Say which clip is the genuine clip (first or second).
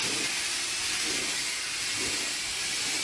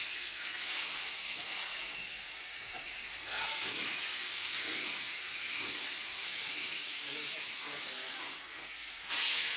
first